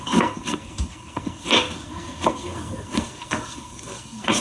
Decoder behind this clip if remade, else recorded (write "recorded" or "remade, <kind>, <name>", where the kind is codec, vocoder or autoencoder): remade, codec, SNAC